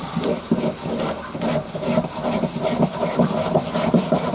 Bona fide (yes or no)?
yes